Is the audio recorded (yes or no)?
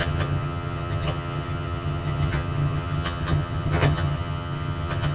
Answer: no